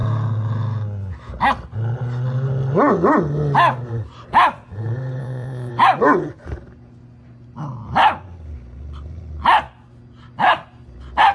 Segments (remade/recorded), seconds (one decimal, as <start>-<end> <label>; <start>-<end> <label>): 0.0-5.2 recorded; 5.2-5.7 remade; 5.7-11.3 recorded